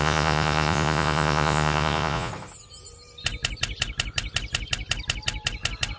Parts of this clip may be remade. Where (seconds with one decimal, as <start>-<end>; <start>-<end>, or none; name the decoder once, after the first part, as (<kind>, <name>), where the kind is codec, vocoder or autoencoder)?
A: 0.0-2.3 (vocoder, Vocos)